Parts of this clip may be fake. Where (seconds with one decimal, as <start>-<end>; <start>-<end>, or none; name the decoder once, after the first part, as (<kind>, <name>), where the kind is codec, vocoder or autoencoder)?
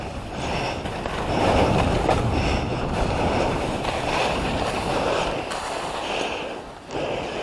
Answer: none